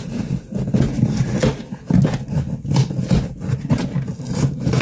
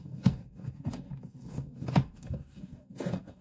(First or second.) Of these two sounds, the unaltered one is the first